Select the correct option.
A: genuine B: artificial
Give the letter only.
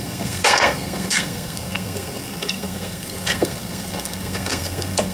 B